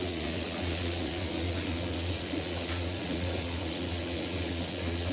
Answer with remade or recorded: remade